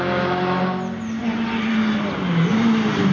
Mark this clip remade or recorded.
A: recorded